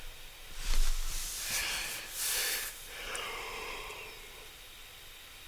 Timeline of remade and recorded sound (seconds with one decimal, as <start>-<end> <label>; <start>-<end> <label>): 0.0-1.6 recorded; 1.6-4.1 remade; 4.1-5.5 recorded